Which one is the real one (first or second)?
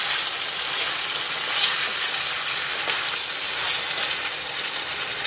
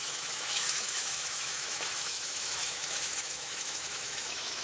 first